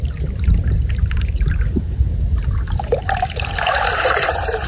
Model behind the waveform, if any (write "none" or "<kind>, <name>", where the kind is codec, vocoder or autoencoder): vocoder, BigVGAN v2